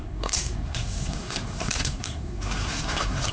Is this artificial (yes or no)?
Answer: yes